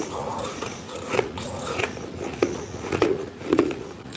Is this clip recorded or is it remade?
remade